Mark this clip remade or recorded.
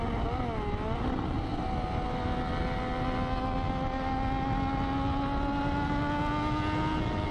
recorded